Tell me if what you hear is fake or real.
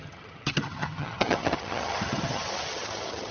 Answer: fake